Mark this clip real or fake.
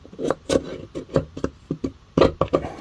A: real